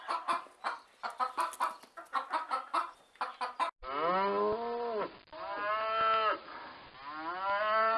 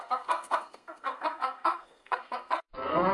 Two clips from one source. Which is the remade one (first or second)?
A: second